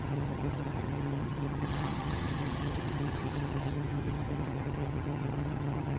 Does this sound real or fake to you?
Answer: fake